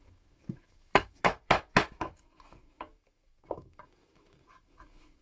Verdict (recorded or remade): remade